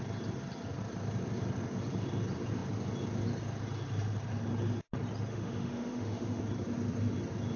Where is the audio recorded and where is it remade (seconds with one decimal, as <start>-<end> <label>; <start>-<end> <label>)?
0.0-5.3 recorded; 5.3-6.4 remade; 6.4-7.6 recorded

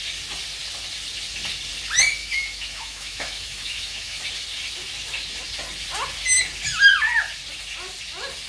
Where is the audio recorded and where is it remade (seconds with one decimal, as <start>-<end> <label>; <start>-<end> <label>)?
0.0-2.2 recorded; 2.2-4.2 remade; 4.2-8.5 recorded

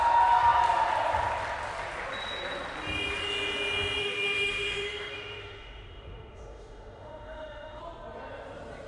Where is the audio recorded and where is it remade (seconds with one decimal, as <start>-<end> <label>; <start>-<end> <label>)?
0.0-4.0 recorded; 4.0-7.8 remade; 7.8-8.9 recorded

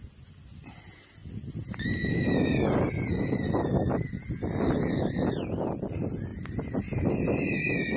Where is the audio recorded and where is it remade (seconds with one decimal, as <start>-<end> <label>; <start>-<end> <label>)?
0.0-8.0 recorded

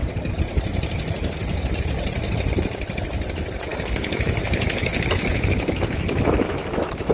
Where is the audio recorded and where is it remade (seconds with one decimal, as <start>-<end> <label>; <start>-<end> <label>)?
0.0-3.7 recorded; 3.7-7.1 remade

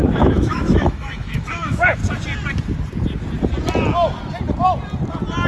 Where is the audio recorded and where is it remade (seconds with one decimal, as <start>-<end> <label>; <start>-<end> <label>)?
0.0-2.0 remade; 2.0-5.5 recorded

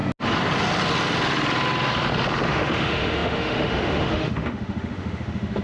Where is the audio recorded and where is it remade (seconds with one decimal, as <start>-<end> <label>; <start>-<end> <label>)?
0.0-2.5 recorded; 2.5-5.6 remade